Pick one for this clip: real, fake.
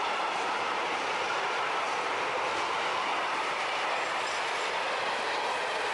real